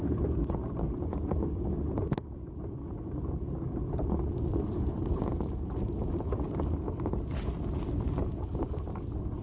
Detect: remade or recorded recorded